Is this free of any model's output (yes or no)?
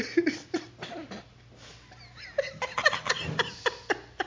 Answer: yes